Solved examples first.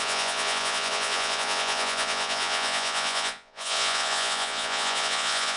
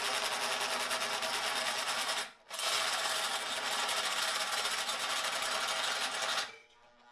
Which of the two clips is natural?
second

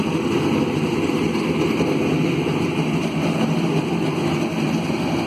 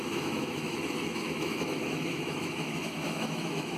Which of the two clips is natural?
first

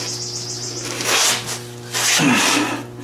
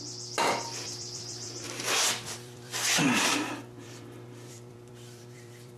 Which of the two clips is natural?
first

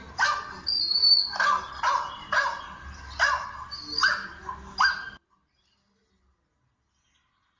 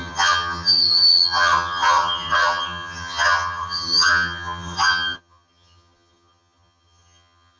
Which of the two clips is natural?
first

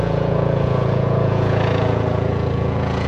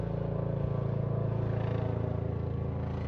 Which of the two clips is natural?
second